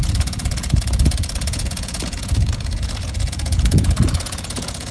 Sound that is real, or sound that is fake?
fake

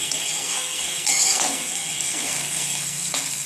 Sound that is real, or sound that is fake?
fake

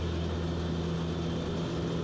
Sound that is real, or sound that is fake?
real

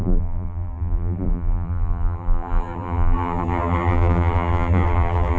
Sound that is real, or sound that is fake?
fake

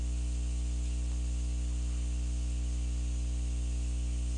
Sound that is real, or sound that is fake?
real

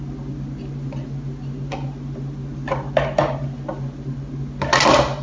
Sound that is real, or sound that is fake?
real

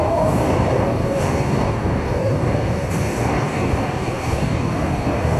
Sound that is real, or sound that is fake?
fake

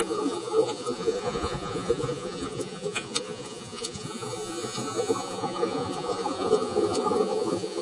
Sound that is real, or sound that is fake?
fake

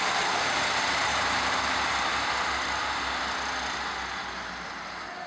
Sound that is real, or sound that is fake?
real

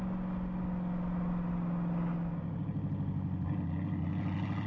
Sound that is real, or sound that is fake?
real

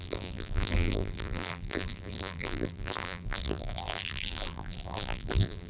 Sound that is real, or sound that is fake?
fake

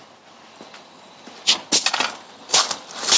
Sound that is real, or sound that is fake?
real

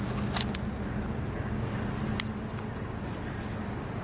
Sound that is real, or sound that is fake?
real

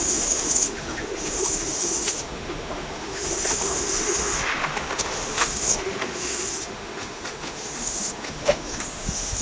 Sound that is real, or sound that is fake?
fake